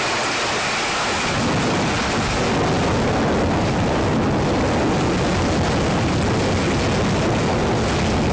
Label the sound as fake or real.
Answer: real